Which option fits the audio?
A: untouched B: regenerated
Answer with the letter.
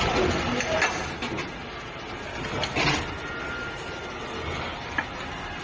A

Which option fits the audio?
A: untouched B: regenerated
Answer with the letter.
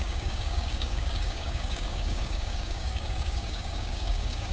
B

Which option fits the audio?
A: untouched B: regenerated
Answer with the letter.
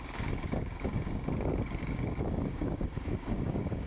B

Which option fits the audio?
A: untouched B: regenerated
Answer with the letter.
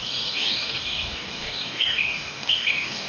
B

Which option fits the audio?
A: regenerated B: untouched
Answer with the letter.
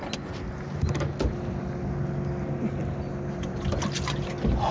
B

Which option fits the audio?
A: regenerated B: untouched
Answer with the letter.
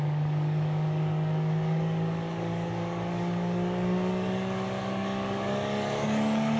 A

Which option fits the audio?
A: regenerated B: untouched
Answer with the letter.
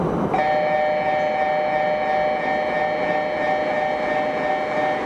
B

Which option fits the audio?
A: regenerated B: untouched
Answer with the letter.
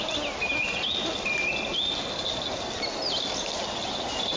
B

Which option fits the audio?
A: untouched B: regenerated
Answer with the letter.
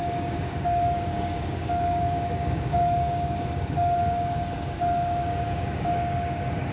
B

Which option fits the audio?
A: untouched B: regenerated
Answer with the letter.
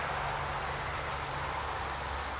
A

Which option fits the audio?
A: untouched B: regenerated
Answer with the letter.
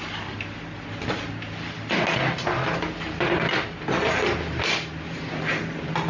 A